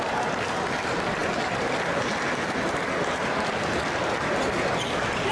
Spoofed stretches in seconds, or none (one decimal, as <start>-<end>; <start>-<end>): none